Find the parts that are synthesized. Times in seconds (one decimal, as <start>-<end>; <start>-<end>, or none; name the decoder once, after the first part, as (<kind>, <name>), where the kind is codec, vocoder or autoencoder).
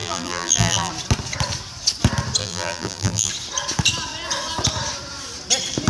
0.0-0.9 (vocoder, BigVGAN v2); 2.4-3.3